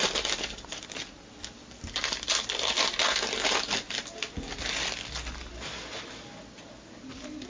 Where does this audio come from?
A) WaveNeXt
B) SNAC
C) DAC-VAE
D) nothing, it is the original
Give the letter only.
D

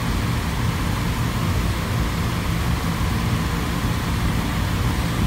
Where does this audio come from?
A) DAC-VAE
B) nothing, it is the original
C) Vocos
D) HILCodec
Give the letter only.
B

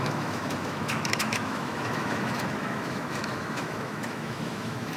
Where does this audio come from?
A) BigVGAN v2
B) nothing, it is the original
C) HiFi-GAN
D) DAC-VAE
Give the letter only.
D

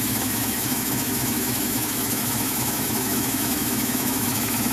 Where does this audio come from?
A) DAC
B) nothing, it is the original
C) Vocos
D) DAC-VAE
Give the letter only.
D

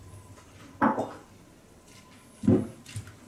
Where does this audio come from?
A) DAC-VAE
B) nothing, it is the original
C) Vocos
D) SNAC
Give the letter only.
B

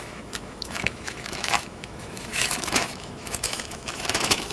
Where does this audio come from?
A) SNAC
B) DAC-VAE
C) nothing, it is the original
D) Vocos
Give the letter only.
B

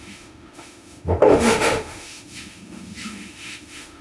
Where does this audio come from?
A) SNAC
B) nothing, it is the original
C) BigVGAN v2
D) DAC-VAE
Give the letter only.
D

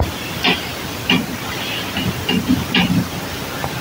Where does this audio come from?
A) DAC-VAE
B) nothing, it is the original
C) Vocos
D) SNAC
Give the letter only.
B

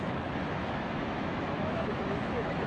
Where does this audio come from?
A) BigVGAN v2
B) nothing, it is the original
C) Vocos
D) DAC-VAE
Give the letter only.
D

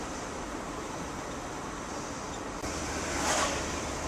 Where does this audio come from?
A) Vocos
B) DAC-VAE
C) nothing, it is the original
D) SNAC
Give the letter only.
C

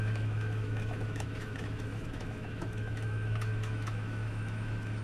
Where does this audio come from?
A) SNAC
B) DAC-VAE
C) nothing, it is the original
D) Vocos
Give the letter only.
B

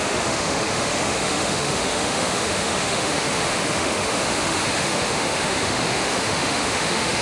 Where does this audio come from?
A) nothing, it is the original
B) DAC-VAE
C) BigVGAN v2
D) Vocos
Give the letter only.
B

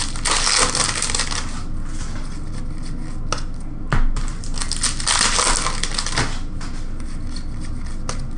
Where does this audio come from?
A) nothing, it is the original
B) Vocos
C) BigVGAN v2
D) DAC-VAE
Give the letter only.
A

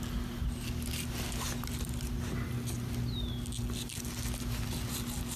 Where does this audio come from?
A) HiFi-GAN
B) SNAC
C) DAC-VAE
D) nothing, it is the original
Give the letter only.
D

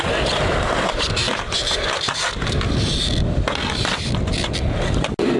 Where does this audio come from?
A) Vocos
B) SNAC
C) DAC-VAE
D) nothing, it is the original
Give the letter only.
D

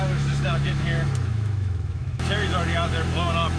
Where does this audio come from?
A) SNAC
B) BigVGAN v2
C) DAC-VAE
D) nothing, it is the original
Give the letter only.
C